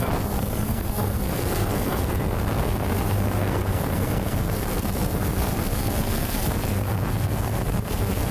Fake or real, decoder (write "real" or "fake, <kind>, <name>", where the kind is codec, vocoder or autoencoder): fake, codec, SNAC